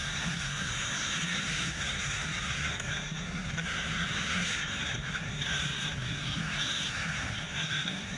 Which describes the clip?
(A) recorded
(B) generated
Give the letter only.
B